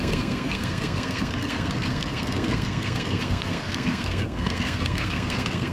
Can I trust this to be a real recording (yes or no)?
no